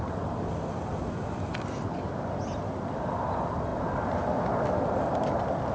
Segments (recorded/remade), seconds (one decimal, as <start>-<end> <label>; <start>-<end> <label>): 0.0-5.7 recorded